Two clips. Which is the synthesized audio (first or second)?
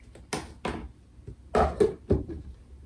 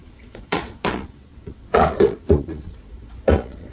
second